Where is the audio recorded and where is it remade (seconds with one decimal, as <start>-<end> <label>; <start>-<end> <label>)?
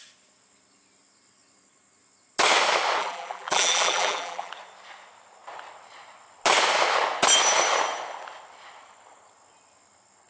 0.0-3.0 recorded; 3.0-4.5 remade; 4.5-10.3 recorded